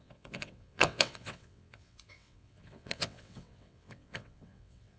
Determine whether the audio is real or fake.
fake